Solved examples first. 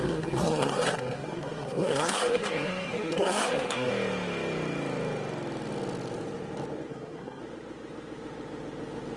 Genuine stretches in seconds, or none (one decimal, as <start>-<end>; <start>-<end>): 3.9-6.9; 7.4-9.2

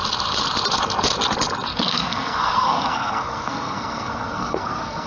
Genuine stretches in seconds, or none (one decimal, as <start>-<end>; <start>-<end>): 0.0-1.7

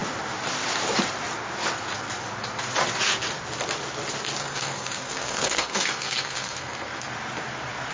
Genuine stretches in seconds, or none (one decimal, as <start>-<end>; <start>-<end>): 0.0-4.4; 7.1-7.9